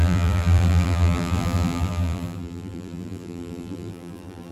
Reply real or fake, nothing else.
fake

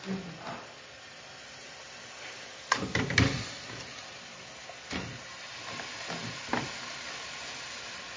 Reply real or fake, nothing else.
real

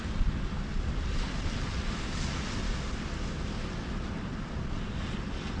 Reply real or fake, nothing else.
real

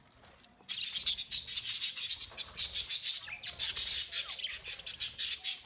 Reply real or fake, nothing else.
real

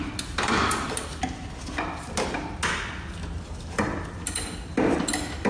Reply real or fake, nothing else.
real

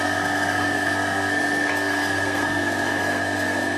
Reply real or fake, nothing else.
fake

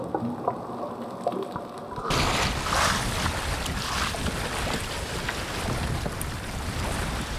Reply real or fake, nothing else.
real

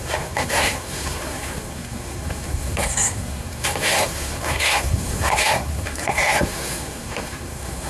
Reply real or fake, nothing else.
fake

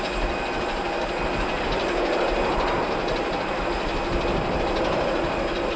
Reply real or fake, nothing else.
real